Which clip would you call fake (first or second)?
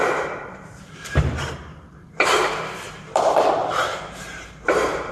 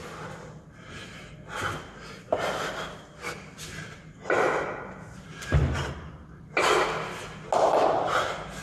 first